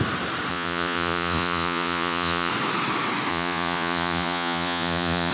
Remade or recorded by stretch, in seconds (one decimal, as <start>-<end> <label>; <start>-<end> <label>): 0.0-0.5 recorded; 0.5-2.5 remade; 2.5-3.3 recorded; 3.3-5.3 remade